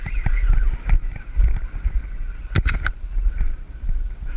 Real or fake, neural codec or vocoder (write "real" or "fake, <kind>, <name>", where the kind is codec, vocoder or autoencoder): real